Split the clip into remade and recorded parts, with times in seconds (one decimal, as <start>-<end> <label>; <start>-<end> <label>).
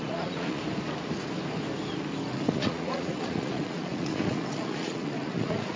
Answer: 0.0-0.6 remade; 0.6-2.3 recorded; 2.3-5.8 remade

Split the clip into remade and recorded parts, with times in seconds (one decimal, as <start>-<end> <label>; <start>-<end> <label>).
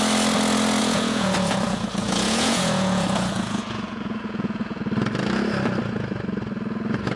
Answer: 0.0-0.8 recorded; 0.8-4.8 remade; 4.8-7.2 recorded